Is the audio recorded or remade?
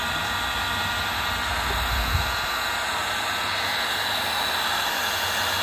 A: recorded